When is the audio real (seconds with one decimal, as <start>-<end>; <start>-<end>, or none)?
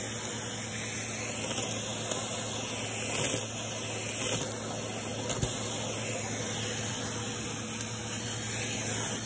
0.0-9.3